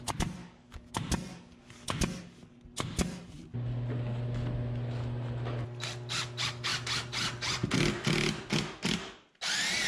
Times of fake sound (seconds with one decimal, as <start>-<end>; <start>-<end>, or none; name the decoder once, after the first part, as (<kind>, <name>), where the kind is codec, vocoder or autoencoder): 0.4-0.9 (codec, DAC); 1.3-2.0

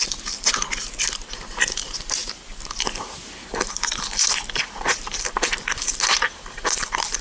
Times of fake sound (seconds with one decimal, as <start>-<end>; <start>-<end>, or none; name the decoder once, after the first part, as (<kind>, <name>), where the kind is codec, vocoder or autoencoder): none

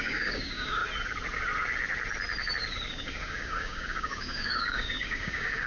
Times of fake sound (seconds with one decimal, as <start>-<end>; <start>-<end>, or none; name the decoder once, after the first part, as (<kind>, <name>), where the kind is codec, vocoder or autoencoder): 0.0-0.8 (codec, DAC); 2.9-5.7

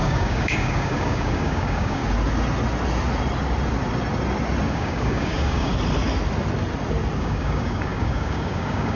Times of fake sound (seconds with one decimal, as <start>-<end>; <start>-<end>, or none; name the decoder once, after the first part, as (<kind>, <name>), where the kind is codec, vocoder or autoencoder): 0.0-2.0 (codec, DAC); 4.7-5.7; 7.2-9.0

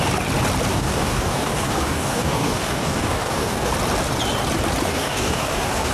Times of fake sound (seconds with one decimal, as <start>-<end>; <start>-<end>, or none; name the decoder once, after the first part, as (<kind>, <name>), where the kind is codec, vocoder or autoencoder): 0.7-3.7 (codec, DAC); 4.9-5.9

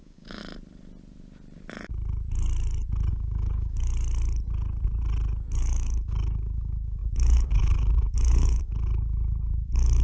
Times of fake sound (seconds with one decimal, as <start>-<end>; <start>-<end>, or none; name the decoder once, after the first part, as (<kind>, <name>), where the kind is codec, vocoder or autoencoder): 0.0-0.4 (codec, DAC); 3.1-3.9; 5.6-10.0

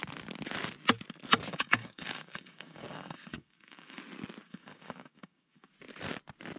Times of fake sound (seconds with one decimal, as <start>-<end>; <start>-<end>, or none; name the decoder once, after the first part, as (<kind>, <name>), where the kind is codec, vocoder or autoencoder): 1.5-4.0 (codec, DAC); 4.4-5.7